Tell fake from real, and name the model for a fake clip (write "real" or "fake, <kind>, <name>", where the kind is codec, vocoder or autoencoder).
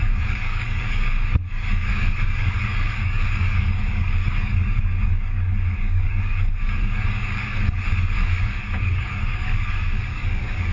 fake, codec, DAC